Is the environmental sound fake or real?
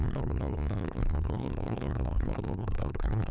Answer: fake